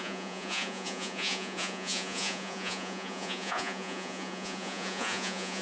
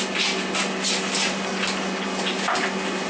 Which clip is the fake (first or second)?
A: first